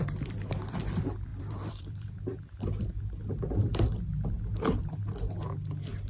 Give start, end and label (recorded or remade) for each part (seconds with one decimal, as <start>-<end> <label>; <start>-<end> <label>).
0.0-3.7 remade; 3.7-6.1 recorded